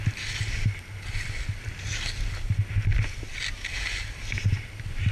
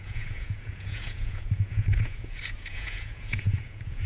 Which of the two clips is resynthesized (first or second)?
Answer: second